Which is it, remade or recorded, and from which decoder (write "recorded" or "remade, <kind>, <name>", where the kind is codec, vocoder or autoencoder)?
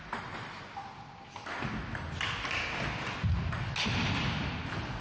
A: recorded